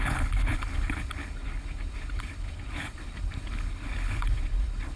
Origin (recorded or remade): remade